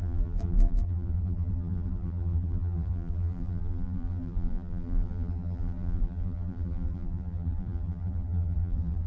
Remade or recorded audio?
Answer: remade